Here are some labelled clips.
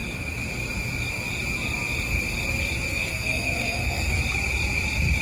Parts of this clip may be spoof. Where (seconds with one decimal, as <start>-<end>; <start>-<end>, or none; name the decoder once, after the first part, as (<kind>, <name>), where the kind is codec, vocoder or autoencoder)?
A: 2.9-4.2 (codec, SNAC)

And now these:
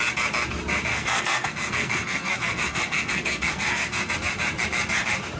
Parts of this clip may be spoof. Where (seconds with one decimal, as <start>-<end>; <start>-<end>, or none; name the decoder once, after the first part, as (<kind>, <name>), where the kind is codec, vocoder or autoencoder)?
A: 0.9-4.1 (codec, SNAC)

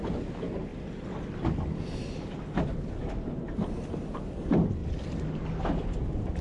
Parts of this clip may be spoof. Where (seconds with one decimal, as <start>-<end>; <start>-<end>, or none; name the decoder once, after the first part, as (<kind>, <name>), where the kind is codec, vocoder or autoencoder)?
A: none

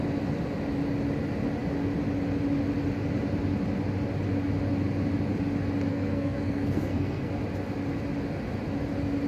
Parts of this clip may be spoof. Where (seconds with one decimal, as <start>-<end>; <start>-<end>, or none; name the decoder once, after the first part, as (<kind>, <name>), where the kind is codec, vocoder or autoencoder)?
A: 5.9-7.3 (codec, SNAC)

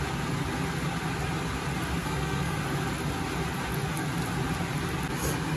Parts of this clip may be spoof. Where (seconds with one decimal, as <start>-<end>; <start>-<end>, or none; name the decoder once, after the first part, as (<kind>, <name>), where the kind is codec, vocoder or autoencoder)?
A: 2.0-2.6 (codec, SNAC)

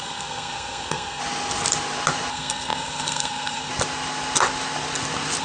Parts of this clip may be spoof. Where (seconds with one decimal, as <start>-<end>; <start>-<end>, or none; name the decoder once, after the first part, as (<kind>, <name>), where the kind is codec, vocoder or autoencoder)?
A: 0.0-1.2 (codec, SNAC); 2.3-3.7

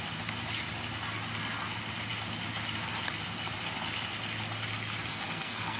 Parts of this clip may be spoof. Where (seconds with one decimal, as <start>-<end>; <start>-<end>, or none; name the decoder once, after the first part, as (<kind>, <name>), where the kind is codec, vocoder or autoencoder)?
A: 5.1-5.8 (codec, SNAC)

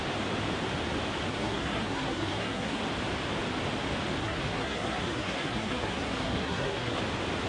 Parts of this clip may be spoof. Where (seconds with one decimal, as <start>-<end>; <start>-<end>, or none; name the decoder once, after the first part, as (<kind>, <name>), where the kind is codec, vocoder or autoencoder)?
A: 1.3-2.8 (codec, SNAC); 4.2-7.0